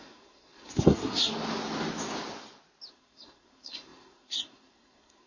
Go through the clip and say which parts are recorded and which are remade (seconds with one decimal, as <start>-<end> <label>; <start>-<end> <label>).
0.0-1.3 remade; 1.3-2.9 recorded; 2.9-5.3 remade